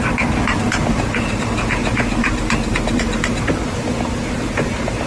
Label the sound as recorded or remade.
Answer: recorded